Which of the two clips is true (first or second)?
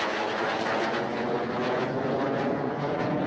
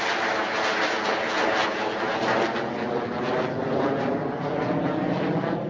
second